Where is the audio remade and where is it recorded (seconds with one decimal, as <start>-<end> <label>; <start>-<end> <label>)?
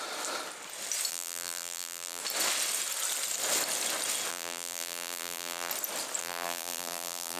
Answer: 0.0-1.1 recorded; 1.1-2.2 remade; 2.2-4.3 recorded; 4.3-5.7 remade; 5.7-6.2 recorded; 6.2-7.4 remade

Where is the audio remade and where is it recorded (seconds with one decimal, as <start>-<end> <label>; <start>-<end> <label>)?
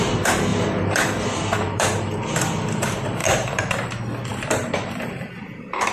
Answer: 0.0-0.5 recorded; 0.5-2.2 remade; 2.2-3.2 recorded; 3.2-3.9 remade; 3.9-4.3 recorded; 4.3-5.3 remade; 5.3-5.9 recorded